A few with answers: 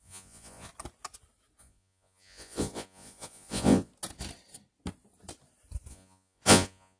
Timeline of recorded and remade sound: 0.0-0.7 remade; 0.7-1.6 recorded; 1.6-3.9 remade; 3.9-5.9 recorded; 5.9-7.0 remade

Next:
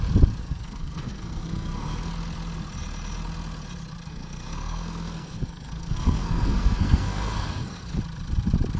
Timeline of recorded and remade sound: 0.0-0.4 recorded; 0.4-2.1 remade; 2.1-4.1 recorded; 4.1-8.0 remade; 8.0-8.8 recorded

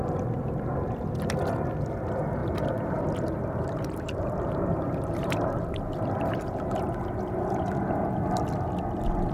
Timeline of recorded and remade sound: 0.0-2.4 recorded; 2.4-6.9 remade; 6.9-9.3 recorded

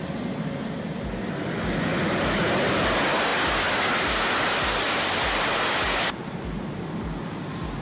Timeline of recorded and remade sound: 0.0-7.8 recorded

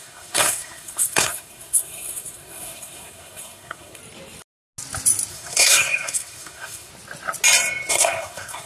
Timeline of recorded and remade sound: 0.0-4.0 remade; 4.0-5.3 recorded; 5.3-6.9 remade; 6.9-7.9 recorded; 7.9-8.7 remade

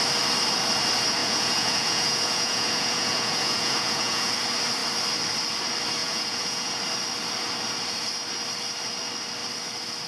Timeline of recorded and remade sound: 0.0-1.2 recorded; 1.2-4.3 remade; 4.3-6.0 recorded; 6.0-6.8 remade; 6.8-10.1 recorded

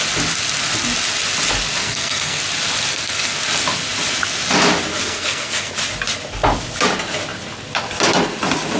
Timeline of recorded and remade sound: 0.0-1.8 recorded; 1.8-2.4 remade; 2.4-2.9 recorded; 2.9-3.4 remade; 3.4-4.9 recorded; 4.9-5.7 remade; 5.7-8.8 recorded